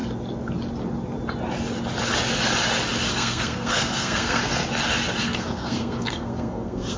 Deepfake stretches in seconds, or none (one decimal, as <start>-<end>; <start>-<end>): 3.1-4.4; 5.2-7.0